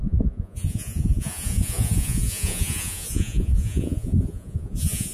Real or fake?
fake